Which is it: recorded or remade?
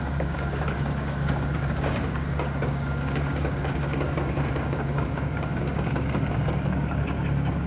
remade